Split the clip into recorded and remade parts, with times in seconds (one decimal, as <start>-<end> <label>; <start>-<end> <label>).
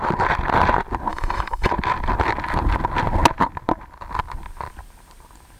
0.0-1.1 recorded; 1.1-1.7 remade; 1.7-5.6 recorded